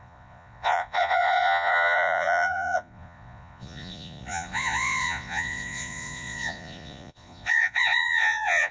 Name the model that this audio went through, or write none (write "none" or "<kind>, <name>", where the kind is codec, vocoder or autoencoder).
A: vocoder, Vocos